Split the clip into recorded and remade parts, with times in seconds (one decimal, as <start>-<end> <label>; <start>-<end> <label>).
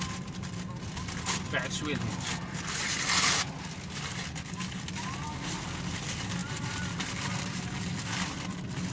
0.0-8.9 recorded